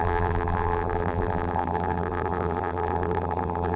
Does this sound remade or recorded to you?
remade